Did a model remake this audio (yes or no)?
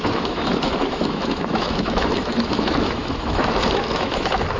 yes